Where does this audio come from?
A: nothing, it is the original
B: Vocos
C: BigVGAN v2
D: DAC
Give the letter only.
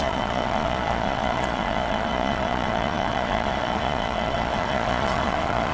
B